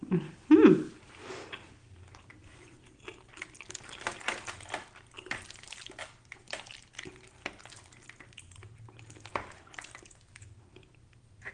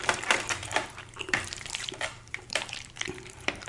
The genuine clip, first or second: first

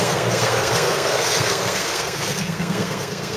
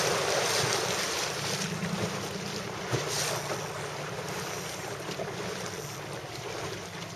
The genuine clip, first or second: second